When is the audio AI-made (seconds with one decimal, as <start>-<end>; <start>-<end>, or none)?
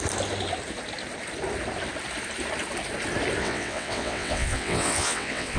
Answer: 3.4-5.6